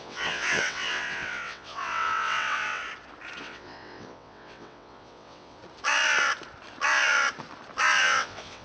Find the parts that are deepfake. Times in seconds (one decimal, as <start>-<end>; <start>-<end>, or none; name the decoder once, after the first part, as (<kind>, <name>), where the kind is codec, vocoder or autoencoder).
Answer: 0.0-2.8 (vocoder, WaveNeXt); 3.4-5.6; 8.0-8.6

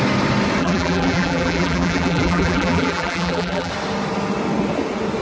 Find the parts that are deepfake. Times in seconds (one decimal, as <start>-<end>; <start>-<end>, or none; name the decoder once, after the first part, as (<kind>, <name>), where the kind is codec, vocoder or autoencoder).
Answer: 0.6-3.7 (vocoder, BigVGAN v2)

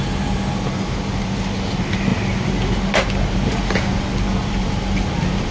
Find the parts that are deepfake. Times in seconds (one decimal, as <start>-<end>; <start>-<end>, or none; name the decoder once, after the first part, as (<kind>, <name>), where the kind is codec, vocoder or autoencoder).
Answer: none